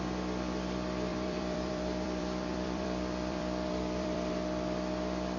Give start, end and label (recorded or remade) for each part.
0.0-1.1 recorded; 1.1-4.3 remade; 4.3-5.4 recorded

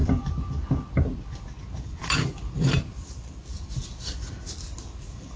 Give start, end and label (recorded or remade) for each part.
0.0-5.4 recorded

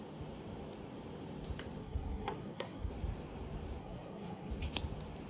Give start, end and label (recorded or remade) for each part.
0.0-1.8 recorded; 1.8-2.9 remade; 2.9-3.8 recorded; 3.8-4.5 remade; 4.5-5.3 recorded